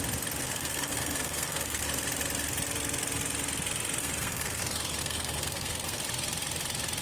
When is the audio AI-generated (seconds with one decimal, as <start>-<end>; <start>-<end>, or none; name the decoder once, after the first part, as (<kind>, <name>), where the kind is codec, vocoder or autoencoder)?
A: 0.4-1.8 (codec, SNAC); 4.0-4.6; 5.0-6.0